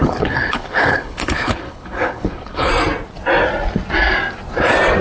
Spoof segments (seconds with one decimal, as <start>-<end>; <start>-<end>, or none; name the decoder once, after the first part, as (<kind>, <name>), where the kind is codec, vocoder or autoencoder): 0.0-2.7 (codec, HILCodec)